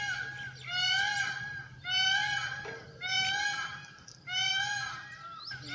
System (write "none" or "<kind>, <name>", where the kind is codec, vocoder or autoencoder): vocoder, BigVGAN v2